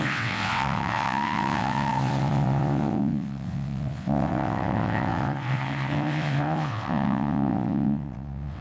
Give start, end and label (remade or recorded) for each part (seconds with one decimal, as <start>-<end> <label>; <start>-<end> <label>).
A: 0.0-8.6 remade